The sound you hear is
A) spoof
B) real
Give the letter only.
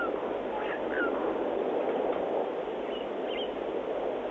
B